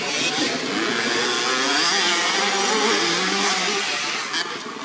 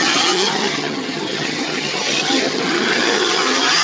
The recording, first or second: first